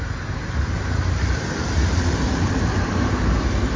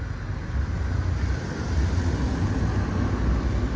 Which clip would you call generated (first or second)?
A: first